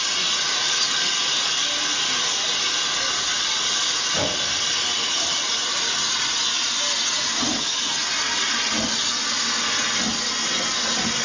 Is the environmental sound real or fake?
real